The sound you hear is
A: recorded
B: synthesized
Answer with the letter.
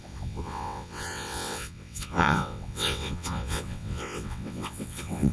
B